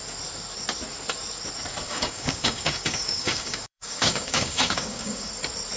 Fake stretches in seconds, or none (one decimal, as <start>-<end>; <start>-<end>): 1.8-5.3

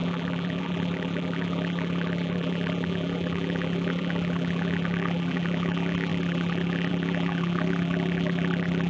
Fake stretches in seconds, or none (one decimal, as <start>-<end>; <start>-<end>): 0.0-8.9